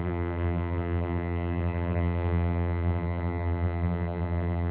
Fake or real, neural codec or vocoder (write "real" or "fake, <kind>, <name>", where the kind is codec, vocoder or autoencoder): fake, vocoder, BigVGAN v2